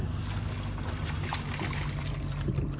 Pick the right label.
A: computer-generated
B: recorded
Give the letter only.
B